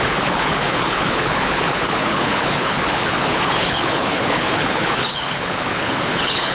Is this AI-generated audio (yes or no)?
yes